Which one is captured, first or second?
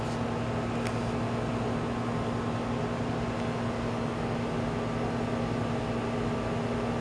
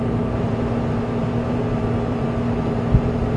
first